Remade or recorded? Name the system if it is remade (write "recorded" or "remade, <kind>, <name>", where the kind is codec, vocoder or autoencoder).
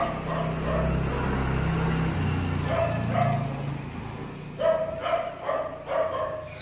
recorded